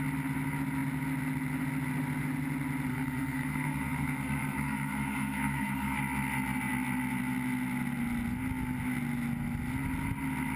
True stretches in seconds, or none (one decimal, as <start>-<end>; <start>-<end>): 0.0-2.9; 6.0-10.6